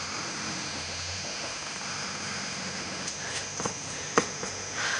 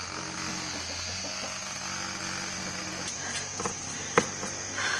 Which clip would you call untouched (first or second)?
second